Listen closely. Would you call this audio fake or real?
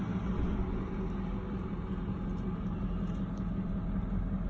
real